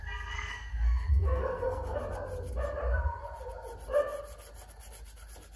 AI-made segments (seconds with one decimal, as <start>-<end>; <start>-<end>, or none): 0.0-2.0